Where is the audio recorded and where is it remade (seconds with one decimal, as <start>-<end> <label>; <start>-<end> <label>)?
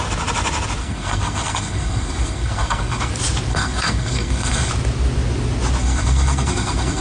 0.0-0.8 recorded; 0.8-3.1 remade; 3.1-3.5 recorded; 3.5-4.7 remade; 4.7-5.8 recorded; 5.8-7.0 remade